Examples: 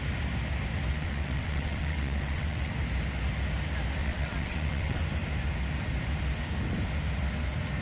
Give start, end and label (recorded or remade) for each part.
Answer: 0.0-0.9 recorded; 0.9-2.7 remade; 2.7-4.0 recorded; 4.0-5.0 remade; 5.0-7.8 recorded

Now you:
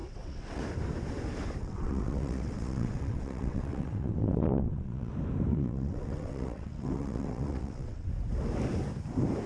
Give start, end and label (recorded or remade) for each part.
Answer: 0.0-0.6 remade; 0.6-1.6 recorded; 1.6-5.1 remade; 5.1-5.5 recorded; 5.5-8.1 remade; 8.1-9.5 recorded

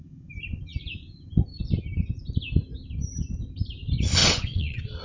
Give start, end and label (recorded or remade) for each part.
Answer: 0.0-4.2 recorded; 4.2-5.0 remade